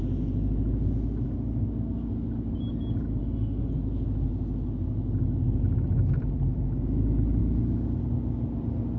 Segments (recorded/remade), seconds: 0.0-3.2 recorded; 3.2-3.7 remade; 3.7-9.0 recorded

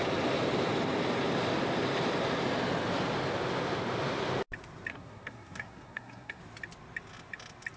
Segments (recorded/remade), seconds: 0.0-4.9 recorded; 4.9-6.4 remade; 6.4-7.8 recorded

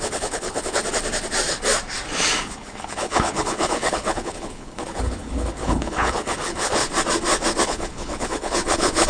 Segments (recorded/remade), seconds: 0.0-0.8 remade; 0.8-2.4 recorded; 2.4-6.8 remade; 6.8-7.6 recorded; 7.6-9.1 remade

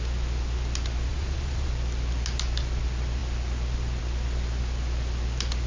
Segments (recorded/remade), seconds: 0.0-1.1 recorded; 1.1-1.7 remade; 1.7-5.7 recorded

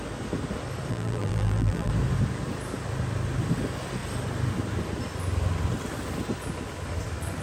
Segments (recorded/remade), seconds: 0.0-0.9 recorded; 0.9-1.9 remade; 1.9-7.4 recorded

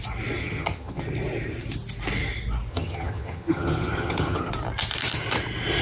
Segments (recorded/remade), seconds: 0.0-0.4 recorded; 0.4-1.0 remade; 1.0-2.7 recorded; 2.7-4.5 remade; 4.5-5.8 recorded

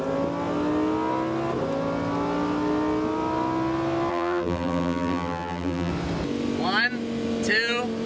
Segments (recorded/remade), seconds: 0.0-4.1 recorded; 4.1-5.9 remade; 5.9-8.1 recorded

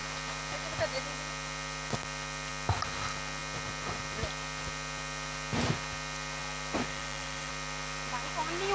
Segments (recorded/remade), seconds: 0.0-6.9 recorded; 6.9-7.5 remade; 7.5-8.7 recorded